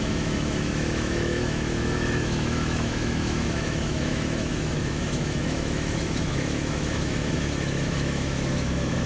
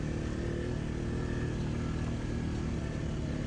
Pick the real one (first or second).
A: second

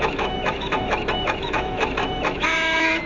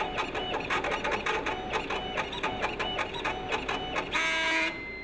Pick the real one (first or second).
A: second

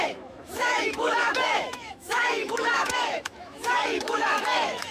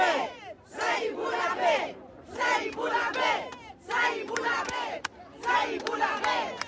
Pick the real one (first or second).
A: second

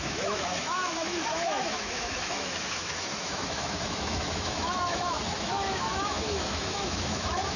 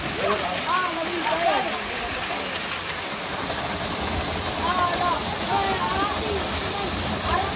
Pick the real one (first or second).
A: second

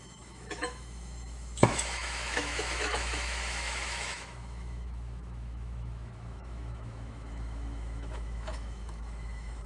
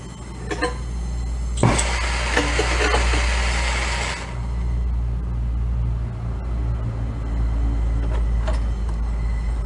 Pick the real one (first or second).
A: second